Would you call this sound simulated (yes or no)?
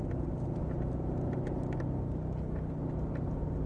no